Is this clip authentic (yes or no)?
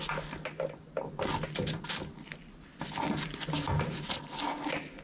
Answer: yes